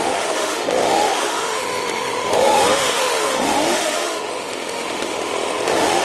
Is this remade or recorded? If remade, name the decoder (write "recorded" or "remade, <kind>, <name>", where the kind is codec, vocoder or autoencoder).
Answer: remade, autoencoder, DAC-VAE